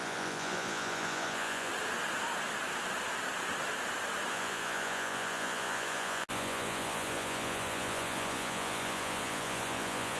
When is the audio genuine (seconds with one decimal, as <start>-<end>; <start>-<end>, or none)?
1.7-4.3